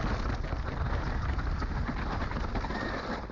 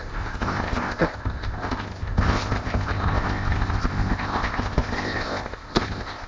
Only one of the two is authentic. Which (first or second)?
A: first